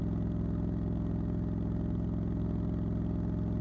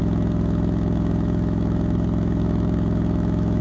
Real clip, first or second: first